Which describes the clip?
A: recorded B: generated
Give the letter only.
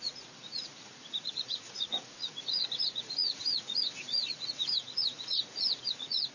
B